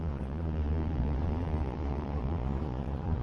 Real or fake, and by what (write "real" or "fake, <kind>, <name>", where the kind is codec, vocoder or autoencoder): fake, vocoder, Vocos